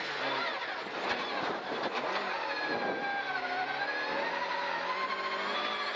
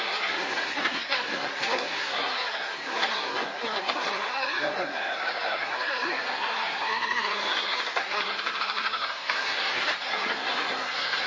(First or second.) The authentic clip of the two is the first